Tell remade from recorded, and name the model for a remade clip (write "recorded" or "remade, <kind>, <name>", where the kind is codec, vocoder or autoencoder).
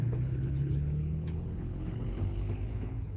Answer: remade, codec, HILCodec